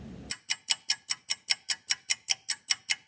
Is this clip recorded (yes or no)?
yes